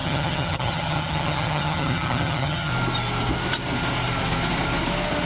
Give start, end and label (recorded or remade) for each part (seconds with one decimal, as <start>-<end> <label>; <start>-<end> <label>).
0.0-2.7 remade; 2.7-5.3 recorded